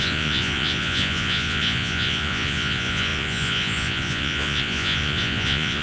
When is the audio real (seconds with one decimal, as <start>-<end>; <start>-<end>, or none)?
none

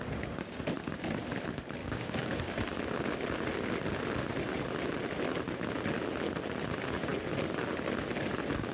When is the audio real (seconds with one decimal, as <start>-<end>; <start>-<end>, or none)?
0.0-1.8; 2.4-8.7

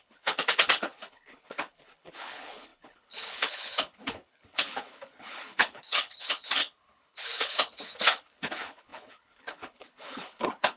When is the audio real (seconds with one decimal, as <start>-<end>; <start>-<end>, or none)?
none

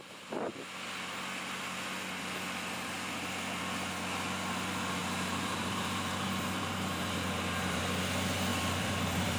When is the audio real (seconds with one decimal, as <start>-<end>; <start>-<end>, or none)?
0.0-5.0; 7.8-8.5

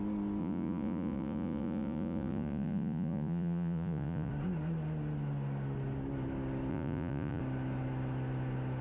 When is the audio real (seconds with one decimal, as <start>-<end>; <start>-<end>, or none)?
0.0-0.4; 4.3-6.7; 7.4-8.8

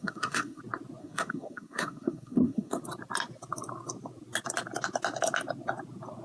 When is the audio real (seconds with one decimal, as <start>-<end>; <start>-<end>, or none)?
0.6-1.0; 2.8-6.2

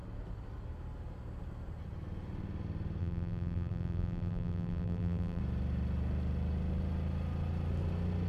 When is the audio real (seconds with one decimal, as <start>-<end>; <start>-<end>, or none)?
0.0-3.0; 5.4-8.3